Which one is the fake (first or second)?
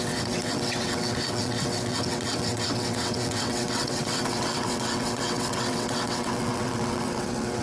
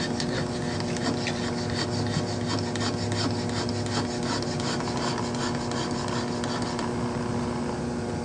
first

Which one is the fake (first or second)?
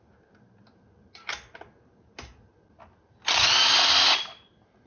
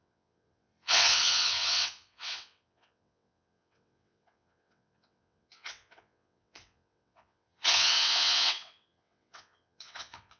second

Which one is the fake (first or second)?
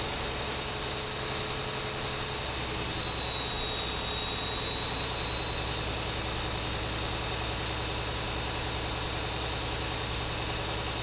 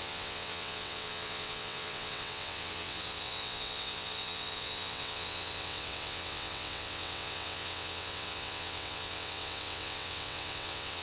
second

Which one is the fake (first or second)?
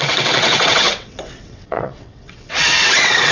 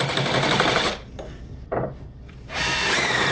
first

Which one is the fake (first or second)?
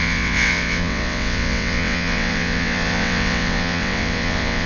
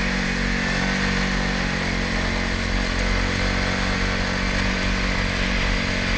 first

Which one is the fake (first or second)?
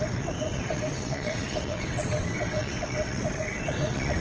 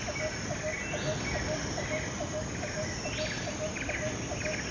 first